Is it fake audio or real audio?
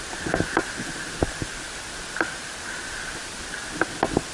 real